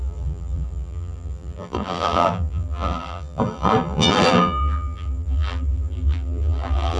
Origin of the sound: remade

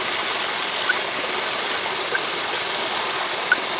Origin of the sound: recorded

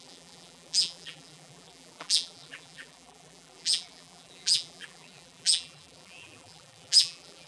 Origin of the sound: remade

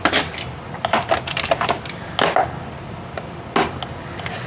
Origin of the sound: recorded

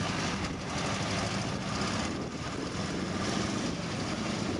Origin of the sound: recorded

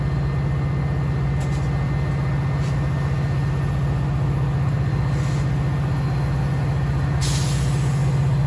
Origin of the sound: recorded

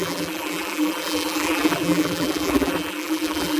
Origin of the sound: remade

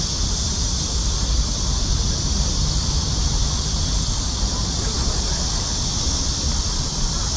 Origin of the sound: remade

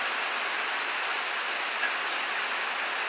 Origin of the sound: recorded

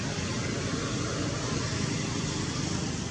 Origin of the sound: recorded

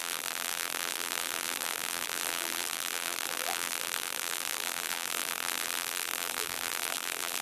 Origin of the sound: remade